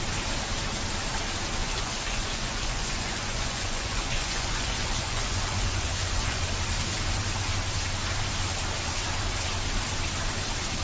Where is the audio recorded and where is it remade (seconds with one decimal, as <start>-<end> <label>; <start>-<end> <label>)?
0.0-1.6 recorded; 1.6-6.4 remade; 6.4-10.8 recorded